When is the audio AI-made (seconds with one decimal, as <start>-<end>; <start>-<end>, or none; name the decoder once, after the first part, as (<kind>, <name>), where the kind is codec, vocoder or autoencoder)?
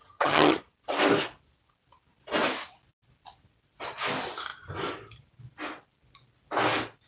0.0-0.6 (vocoder, HiFi-GAN)